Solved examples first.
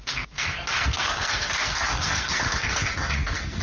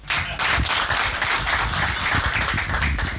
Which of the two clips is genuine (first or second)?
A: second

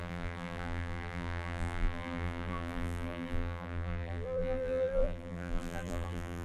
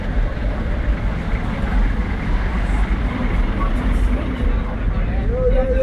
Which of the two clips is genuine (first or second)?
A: second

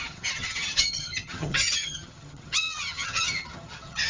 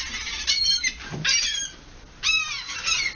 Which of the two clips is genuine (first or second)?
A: second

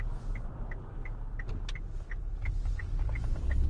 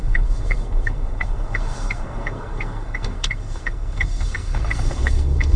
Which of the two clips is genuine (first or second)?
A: first